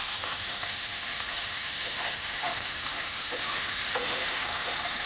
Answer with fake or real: fake